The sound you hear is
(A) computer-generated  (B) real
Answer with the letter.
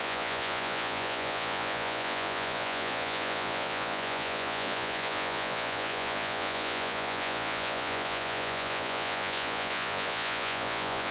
A